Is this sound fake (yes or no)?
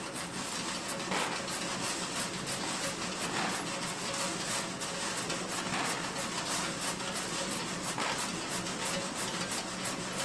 no